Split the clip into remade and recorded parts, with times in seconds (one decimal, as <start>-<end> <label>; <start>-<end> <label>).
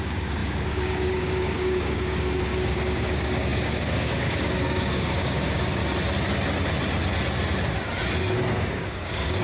0.0-5.8 remade; 5.8-8.5 recorded; 8.5-9.4 remade